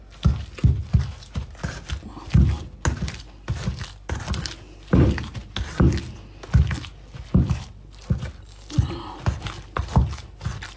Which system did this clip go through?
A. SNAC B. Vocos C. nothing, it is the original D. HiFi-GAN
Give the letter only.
C